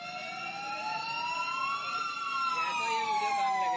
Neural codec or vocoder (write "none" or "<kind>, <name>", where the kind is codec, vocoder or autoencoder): none